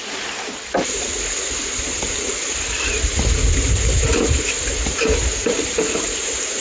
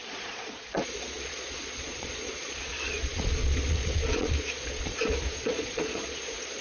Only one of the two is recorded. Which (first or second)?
first